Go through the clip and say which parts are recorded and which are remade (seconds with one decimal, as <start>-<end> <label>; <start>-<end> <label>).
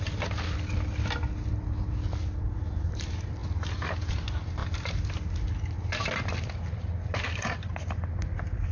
0.0-8.7 recorded